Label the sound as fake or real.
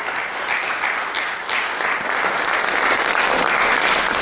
real